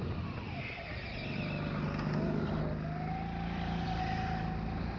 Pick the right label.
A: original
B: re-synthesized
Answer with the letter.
A